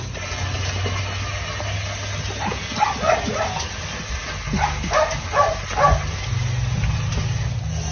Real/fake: real